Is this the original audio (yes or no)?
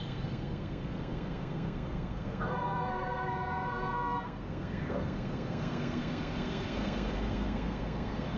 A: no